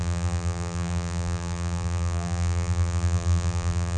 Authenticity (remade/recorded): remade